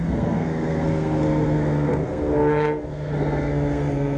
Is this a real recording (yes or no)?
no